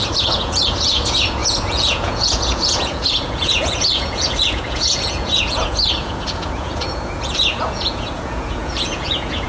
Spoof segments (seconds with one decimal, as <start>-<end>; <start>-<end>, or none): 0.0-9.5